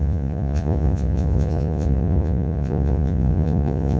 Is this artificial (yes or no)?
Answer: yes